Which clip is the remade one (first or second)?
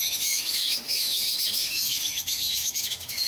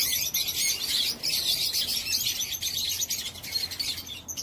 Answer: first